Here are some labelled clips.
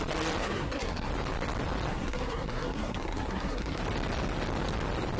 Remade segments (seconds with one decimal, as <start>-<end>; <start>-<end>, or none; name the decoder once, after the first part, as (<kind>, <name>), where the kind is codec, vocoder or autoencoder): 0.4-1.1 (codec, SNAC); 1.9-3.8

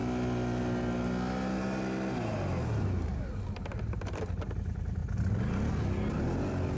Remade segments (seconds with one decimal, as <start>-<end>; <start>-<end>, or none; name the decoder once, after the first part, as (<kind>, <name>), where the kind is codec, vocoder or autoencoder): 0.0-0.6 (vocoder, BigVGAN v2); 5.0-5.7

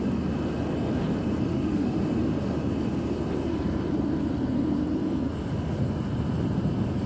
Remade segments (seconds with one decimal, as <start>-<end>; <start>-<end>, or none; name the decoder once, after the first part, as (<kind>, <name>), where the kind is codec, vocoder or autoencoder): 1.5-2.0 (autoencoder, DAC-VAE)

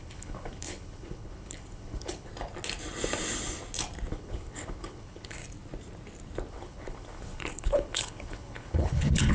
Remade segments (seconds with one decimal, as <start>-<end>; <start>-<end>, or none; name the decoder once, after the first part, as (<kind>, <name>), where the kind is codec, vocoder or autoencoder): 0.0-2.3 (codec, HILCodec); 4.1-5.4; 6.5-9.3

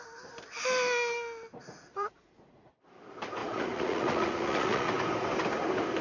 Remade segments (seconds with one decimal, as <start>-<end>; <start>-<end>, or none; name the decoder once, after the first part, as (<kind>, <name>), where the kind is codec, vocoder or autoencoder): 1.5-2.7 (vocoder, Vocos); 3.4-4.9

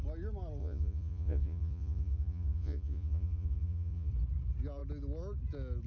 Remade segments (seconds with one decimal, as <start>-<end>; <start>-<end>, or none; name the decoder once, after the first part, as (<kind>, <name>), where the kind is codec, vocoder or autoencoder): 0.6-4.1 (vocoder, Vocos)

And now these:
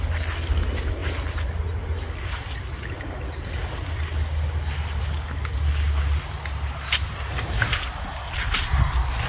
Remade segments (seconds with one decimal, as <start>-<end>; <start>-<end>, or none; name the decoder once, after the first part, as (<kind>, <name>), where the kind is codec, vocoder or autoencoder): none